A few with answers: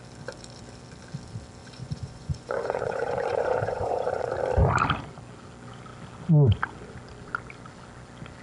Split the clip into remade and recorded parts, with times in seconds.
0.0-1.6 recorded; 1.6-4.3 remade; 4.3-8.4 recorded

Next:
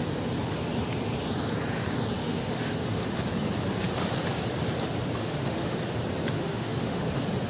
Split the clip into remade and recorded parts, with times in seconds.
0.0-2.2 recorded; 2.2-3.0 remade; 3.0-5.2 recorded; 5.2-5.8 remade; 5.8-6.4 recorded; 6.4-7.1 remade; 7.1-7.5 recorded

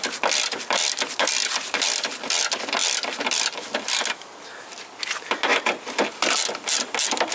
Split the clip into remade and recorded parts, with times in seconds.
0.0-7.3 recorded

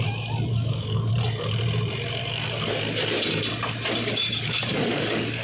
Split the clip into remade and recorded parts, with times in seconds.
0.0-0.5 recorded; 0.5-1.1 remade; 1.1-2.2 recorded; 2.2-2.7 remade; 2.7-4.0 recorded; 4.0-5.4 remade

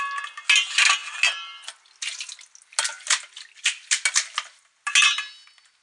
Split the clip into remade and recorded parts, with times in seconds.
0.0-5.8 recorded

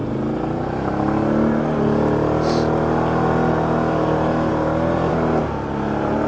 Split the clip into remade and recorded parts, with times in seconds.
0.0-6.3 recorded